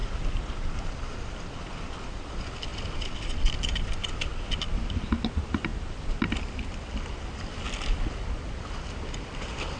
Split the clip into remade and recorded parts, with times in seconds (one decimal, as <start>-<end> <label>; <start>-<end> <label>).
0.0-0.8 remade; 0.8-9.8 recorded